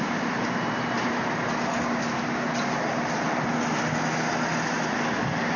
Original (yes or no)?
yes